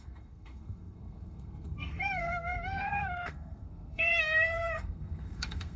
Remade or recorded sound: remade